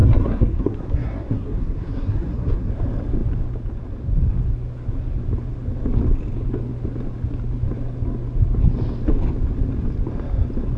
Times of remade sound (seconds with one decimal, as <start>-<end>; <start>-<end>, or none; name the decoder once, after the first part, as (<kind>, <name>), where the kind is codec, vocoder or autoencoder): 0.0-2.7 (codec, SNAC)